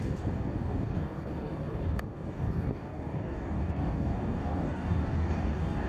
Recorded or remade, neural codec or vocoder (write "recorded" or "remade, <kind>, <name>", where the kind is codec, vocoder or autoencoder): remade, codec, DAC